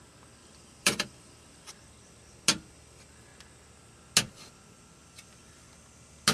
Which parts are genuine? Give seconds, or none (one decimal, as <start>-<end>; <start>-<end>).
0.0-0.4; 1.7-5.0; 5.7-6.3